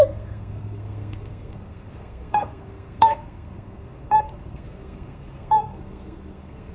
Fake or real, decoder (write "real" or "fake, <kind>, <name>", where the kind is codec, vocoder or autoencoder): fake, codec, SNAC